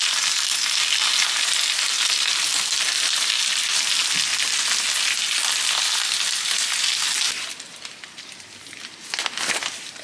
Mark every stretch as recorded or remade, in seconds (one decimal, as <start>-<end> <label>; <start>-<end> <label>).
0.0-10.0 recorded